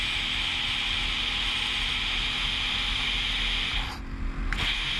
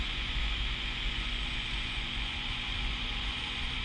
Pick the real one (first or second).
first